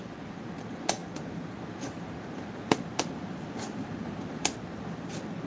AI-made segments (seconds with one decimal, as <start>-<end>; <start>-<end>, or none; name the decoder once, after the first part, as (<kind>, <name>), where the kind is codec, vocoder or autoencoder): none